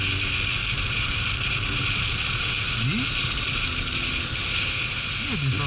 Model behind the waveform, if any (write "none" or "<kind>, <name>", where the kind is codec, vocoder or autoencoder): none